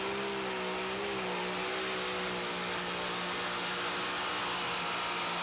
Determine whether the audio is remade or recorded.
recorded